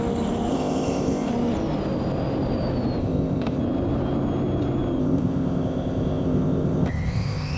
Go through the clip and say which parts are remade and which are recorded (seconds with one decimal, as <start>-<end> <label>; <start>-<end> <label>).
0.0-0.5 recorded; 0.5-1.3 remade; 1.3-3.0 recorded; 3.0-3.6 remade; 3.6-5.0 recorded; 5.0-7.6 remade